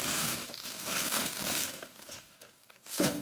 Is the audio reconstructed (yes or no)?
yes